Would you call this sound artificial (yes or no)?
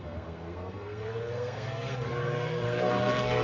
yes